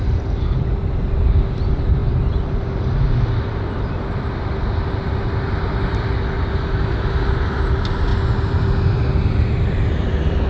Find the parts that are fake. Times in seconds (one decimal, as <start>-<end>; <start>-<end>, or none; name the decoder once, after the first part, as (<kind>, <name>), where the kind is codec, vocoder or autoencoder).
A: none